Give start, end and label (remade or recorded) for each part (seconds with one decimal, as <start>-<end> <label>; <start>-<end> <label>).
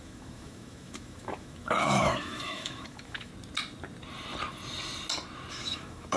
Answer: 0.0-3.3 remade; 3.3-5.5 recorded; 5.5-6.2 remade